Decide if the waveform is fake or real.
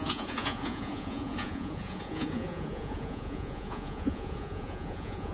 fake